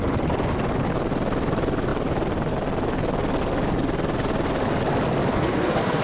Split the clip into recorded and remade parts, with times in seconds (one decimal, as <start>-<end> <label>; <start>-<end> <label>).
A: 0.0-5.3 recorded; 5.3-6.0 remade